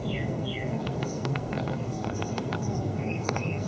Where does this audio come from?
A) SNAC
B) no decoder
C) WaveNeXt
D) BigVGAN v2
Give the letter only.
A